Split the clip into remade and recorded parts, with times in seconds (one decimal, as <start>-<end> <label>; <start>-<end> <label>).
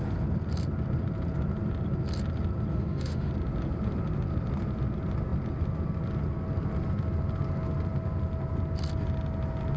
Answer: 0.0-2.7 recorded; 2.7-3.3 remade; 3.3-9.8 recorded